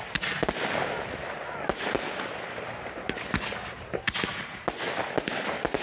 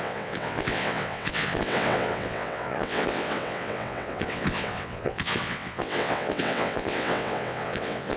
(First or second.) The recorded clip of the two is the first